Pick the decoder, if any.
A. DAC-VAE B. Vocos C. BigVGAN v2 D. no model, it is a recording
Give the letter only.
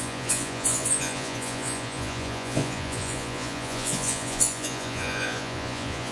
B